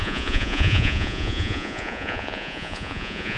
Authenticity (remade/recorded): remade